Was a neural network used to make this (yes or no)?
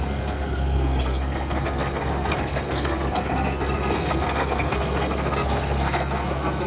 yes